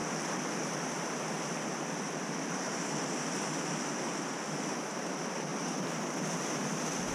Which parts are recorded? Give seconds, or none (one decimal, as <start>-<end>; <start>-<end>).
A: 0.0-5.5